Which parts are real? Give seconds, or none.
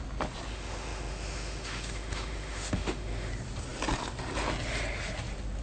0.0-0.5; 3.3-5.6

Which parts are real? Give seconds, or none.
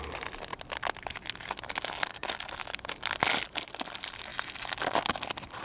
0.0-5.6